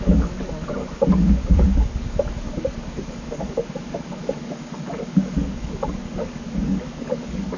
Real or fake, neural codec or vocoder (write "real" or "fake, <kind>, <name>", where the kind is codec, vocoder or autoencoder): fake, codec, DAC